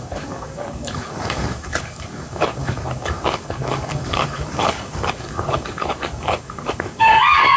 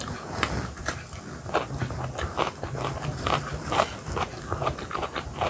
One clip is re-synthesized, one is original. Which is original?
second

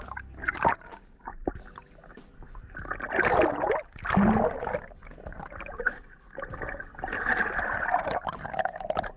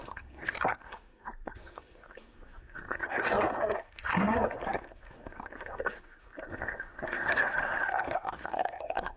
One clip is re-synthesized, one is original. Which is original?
first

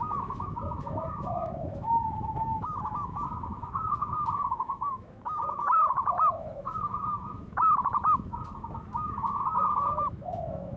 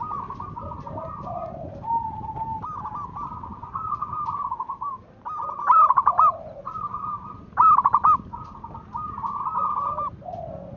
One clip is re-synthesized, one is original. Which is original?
second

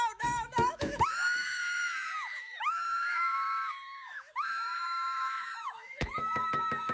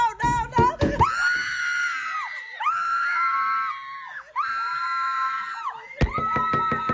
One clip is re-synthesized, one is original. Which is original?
second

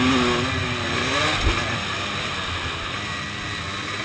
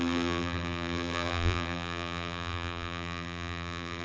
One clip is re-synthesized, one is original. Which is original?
first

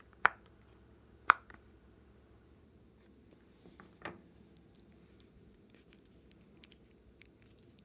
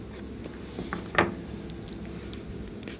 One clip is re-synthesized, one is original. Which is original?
second